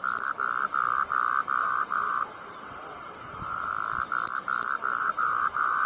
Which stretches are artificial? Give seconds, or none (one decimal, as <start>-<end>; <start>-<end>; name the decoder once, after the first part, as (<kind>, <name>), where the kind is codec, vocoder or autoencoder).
1.6-3.7 (vocoder, BigVGAN v2); 5.0-5.9